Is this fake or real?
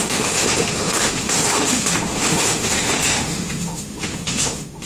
fake